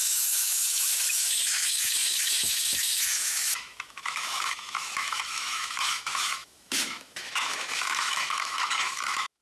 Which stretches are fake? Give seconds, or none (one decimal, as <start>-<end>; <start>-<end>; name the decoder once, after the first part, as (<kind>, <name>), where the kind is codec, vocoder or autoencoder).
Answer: 0.0-9.4 (autoencoder, DAC-VAE)